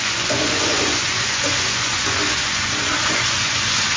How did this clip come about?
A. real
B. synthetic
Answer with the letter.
B